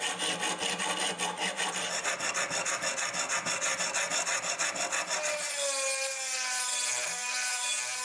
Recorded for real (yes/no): yes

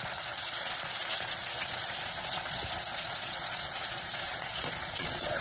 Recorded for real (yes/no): no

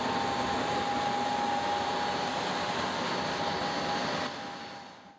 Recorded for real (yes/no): yes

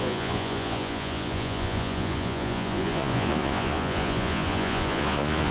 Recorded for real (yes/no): no